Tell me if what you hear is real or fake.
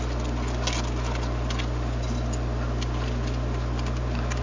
real